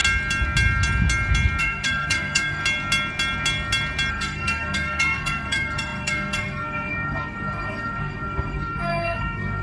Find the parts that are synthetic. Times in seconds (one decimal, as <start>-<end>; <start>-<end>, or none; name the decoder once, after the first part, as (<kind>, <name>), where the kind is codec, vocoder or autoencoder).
1.6-2.6 (codec, SNAC); 4.1-9.6